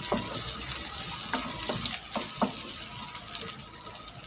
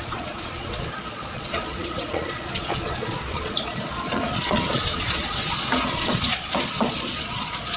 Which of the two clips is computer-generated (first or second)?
second